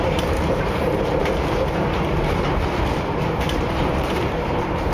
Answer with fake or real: fake